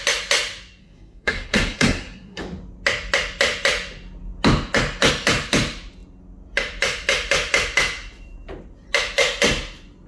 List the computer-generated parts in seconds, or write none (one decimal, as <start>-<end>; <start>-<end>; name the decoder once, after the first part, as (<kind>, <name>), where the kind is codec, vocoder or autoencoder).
0.8-2.4 (codec, SNAC)